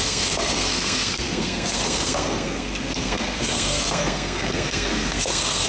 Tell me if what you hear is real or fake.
fake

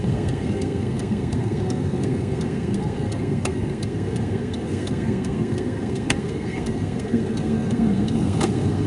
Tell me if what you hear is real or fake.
fake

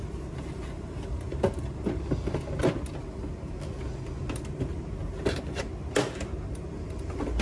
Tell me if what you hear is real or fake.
real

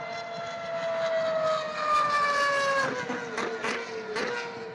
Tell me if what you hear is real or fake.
real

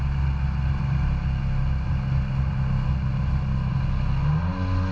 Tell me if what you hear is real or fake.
real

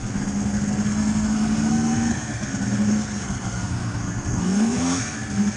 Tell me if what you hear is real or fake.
fake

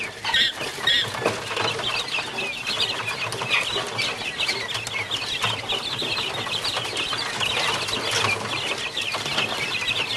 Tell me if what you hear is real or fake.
real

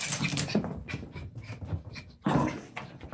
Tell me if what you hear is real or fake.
real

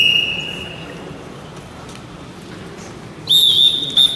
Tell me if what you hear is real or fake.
real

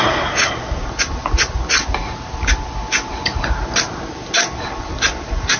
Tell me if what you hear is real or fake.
real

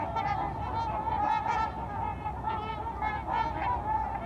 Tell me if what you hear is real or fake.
real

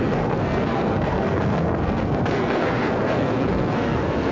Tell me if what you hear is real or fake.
fake